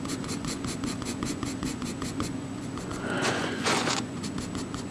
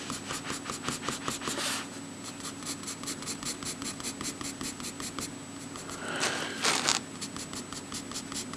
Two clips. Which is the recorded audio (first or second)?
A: second